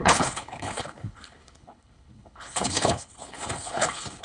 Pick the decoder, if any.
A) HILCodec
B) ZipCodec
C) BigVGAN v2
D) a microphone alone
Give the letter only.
A